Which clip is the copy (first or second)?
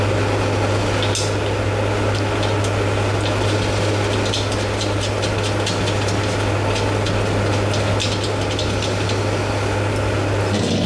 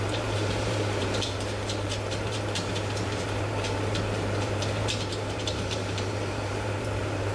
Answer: second